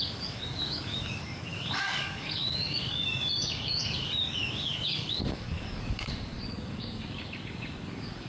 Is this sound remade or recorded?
remade